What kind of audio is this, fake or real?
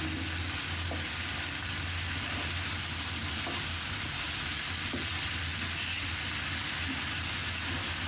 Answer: real